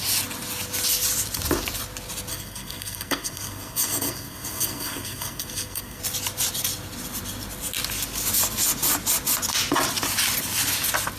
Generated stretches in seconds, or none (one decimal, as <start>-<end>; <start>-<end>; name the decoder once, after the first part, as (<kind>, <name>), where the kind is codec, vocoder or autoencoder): 2.3-6.0 (codec, SNAC)